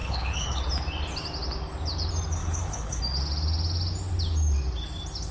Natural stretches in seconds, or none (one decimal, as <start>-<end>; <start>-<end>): 0.6-2.4; 3.0-5.3